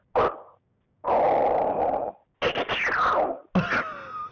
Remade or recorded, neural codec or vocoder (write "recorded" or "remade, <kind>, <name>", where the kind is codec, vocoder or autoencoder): recorded